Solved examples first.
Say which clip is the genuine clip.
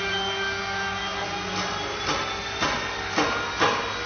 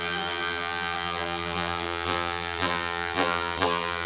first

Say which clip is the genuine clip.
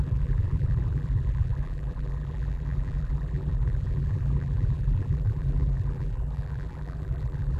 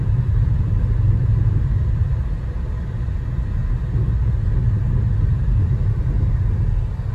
second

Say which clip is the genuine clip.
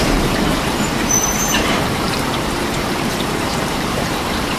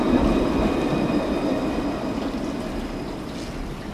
second